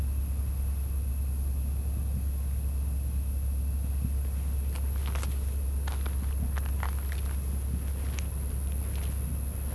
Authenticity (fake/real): real